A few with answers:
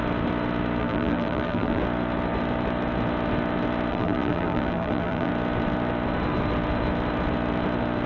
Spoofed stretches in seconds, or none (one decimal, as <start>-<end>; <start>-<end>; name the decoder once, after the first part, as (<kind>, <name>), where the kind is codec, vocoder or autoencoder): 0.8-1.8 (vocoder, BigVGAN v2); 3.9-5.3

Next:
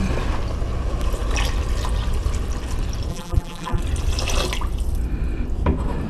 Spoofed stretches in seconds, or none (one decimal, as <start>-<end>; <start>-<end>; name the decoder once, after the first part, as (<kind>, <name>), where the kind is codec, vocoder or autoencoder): 3.1-3.8 (vocoder, BigVGAN v2)

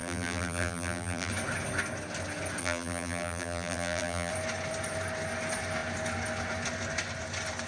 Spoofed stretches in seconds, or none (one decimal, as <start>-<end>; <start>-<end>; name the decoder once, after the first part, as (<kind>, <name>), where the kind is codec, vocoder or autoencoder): 0.0-1.3 (vocoder, BigVGAN v2); 2.6-4.3

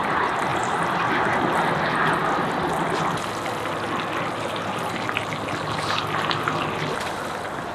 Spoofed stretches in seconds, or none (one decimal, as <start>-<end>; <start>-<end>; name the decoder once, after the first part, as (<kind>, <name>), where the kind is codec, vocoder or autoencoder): none